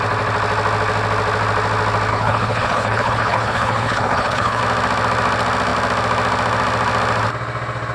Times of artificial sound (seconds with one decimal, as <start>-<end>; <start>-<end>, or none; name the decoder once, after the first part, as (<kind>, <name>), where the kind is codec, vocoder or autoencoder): 2.1-4.6 (codec, HILCodec)

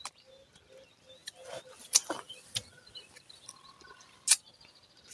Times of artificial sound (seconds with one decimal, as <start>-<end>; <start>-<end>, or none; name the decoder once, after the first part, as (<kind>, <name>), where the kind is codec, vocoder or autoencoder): none

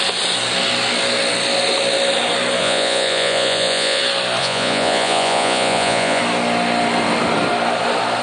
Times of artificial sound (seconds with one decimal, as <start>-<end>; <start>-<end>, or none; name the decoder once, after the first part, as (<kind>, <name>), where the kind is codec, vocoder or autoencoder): 2.6-4.0 (vocoder, Vocos); 4.4-6.2

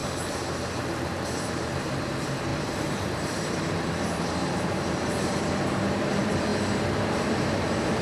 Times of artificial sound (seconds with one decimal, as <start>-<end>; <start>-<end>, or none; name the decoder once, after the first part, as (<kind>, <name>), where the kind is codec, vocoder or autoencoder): 0.0-8.0 (vocoder, BigVGAN v2)

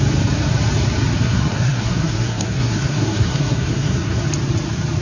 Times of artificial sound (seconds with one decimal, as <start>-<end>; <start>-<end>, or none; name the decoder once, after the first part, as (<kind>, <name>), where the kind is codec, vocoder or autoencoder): 1.2-4.2 (codec, SNAC)

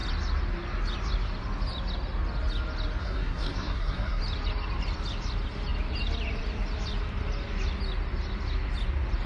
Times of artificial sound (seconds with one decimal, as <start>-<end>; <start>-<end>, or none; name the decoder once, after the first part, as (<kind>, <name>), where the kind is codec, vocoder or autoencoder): 3.0-4.2 (codec, SNAC)